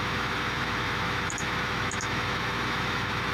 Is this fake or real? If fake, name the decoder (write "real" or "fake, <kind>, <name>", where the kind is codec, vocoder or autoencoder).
fake, autoencoder, DAC-VAE